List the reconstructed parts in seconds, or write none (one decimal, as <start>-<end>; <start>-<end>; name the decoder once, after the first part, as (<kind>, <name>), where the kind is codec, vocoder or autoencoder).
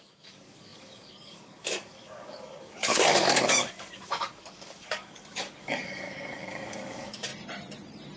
0.0-7.3 (codec, DAC)